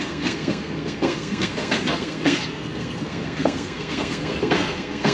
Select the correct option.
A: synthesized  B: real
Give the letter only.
A